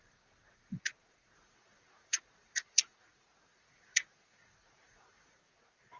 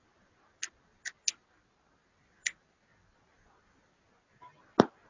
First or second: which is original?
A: second